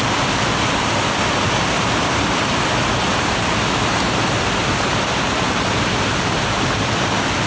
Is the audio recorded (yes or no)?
yes